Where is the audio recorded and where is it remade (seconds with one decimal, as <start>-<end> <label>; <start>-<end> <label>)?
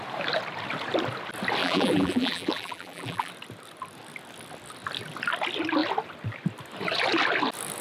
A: 0.0-1.6 recorded; 1.6-3.3 remade; 3.3-7.8 recorded